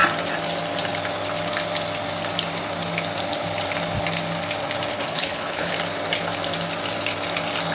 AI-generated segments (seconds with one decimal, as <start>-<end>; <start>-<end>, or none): 4.9-5.7